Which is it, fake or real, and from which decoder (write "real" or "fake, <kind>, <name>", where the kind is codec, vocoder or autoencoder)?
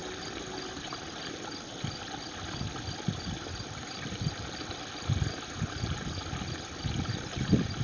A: real